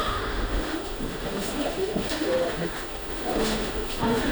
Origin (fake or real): fake